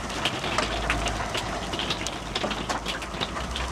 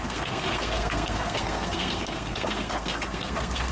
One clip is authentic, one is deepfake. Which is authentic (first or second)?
first